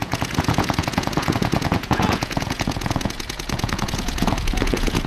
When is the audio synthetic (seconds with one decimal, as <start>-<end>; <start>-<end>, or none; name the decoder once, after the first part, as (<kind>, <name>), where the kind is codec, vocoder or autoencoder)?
0.0-5.1 (vocoder, Vocos)